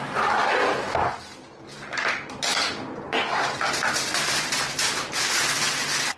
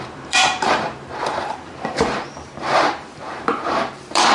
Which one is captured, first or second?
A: first